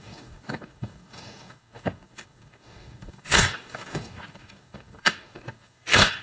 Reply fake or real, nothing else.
fake